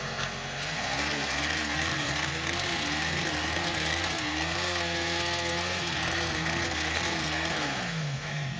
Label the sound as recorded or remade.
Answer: remade